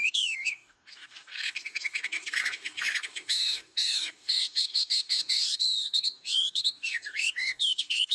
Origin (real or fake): fake